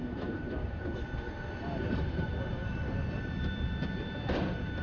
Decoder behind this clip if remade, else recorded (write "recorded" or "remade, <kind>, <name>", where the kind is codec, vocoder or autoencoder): remade, vocoder, BigVGAN v2